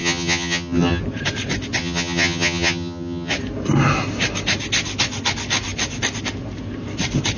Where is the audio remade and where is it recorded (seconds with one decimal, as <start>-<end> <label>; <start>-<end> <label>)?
0.0-1.0 remade; 1.0-1.8 recorded; 1.8-3.3 remade; 3.3-7.4 recorded